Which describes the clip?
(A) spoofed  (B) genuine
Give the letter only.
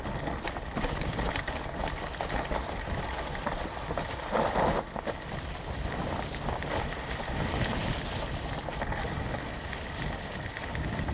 B